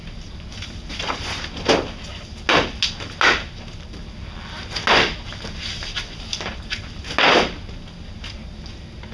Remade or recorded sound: recorded